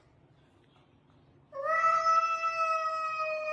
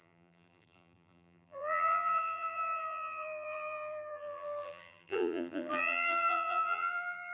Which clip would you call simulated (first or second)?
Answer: second